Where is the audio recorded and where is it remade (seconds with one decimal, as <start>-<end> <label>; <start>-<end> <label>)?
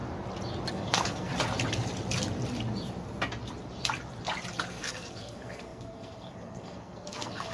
0.0-0.7 recorded; 0.7-1.3 remade; 1.3-4.7 recorded; 4.7-7.5 remade